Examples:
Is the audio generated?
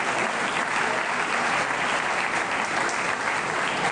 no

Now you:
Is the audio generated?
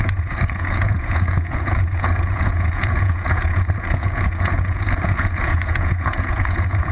yes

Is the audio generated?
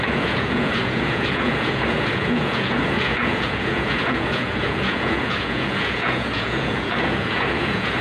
yes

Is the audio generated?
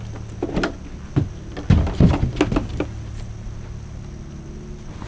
no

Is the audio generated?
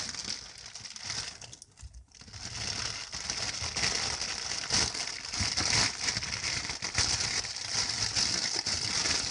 no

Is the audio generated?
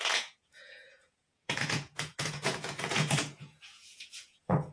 yes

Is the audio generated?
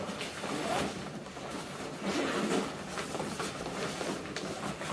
no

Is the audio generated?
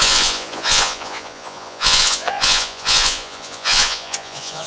yes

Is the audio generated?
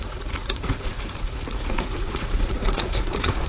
yes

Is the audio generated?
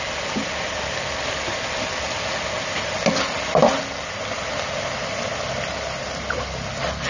no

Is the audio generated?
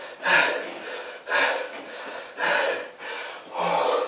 no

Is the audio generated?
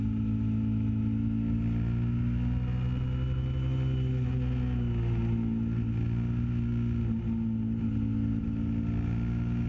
no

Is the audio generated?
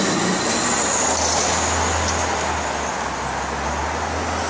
no